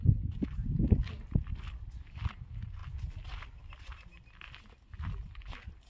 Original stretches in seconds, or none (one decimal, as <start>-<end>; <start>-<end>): 0.0-5.9